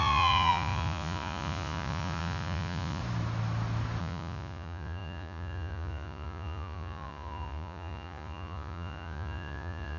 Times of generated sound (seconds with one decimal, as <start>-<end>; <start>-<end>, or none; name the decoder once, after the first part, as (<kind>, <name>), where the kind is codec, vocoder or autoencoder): 0.0-3.0 (vocoder, Vocos); 4.0-10.0